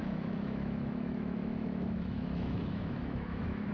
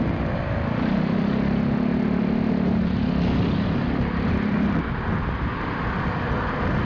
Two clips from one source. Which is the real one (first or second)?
second